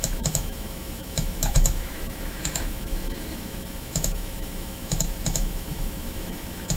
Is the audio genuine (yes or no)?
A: no